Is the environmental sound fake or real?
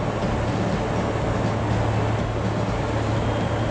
real